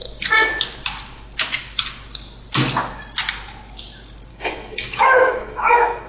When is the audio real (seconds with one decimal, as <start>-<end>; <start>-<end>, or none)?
0.0-4.3